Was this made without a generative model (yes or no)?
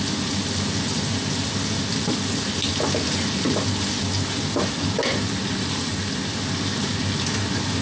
yes